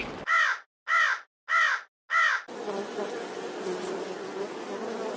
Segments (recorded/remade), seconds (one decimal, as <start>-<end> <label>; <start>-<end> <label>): 0.0-5.2 recorded